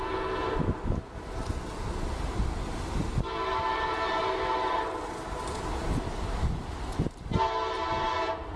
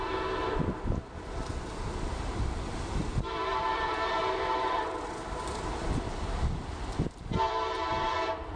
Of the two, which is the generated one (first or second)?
second